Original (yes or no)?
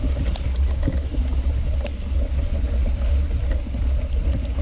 yes